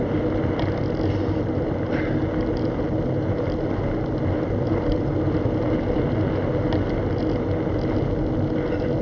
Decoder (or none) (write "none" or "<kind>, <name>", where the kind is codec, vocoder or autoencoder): none